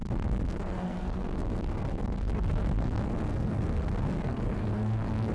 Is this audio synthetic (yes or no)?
yes